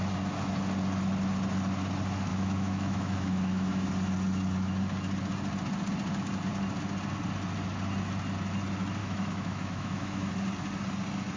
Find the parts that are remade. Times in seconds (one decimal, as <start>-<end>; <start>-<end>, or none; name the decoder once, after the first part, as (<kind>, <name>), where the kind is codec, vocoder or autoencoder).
2.3-3.9 (autoencoder, DAC-VAE); 9.0-10.3